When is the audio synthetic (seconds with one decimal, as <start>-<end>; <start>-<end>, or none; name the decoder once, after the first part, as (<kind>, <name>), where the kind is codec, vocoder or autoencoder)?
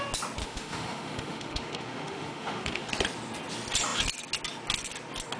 0.4-2.9 (autoencoder, DAC-VAE)